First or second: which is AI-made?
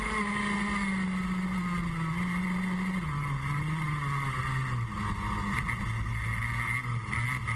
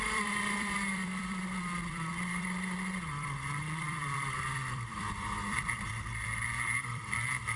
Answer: second